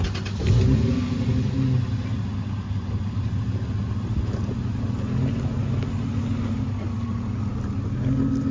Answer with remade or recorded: recorded